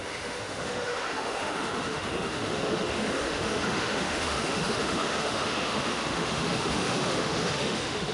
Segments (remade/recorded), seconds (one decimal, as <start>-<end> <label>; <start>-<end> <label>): 0.0-8.1 remade